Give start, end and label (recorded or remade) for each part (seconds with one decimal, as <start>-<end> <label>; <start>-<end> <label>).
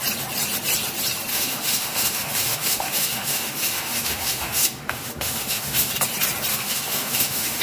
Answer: 0.0-1.3 recorded; 1.3-5.9 remade; 5.9-6.5 recorded; 6.5-7.6 remade